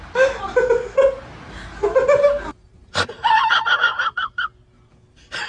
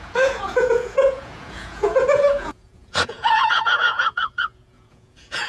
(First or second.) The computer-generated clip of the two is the second